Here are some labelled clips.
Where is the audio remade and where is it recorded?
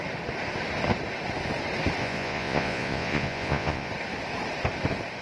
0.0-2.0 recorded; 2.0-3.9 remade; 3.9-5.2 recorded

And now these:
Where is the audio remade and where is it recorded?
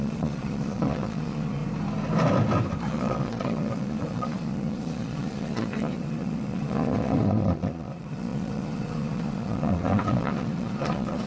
0.0-1.6 remade; 1.6-2.8 recorded; 2.8-11.3 remade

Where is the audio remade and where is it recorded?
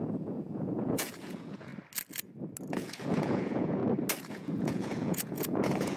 0.0-1.7 remade; 1.7-2.7 recorded; 2.7-3.8 remade; 3.8-4.3 recorded; 4.3-6.0 remade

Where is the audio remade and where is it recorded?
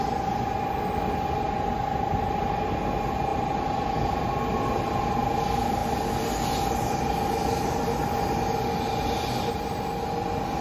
0.0-10.6 recorded